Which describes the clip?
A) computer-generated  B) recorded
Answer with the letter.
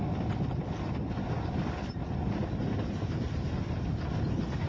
B